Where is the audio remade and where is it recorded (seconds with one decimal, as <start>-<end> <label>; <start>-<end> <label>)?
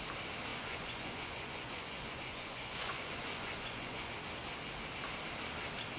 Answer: 0.0-0.5 recorded; 0.5-4.1 remade; 4.1-6.0 recorded